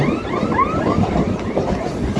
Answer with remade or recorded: recorded